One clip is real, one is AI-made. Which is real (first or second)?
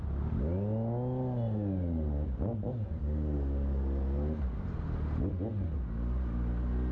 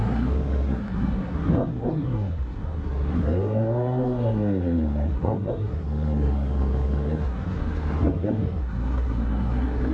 first